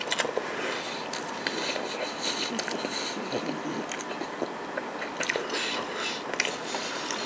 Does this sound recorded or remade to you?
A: recorded